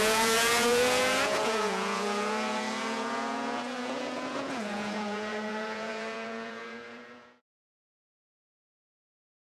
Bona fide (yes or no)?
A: no